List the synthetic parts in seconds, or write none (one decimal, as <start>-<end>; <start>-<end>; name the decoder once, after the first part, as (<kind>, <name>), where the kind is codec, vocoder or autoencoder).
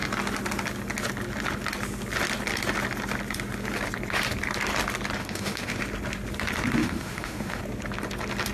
5.2-5.8 (autoencoder, DAC-VAE); 6.8-7.6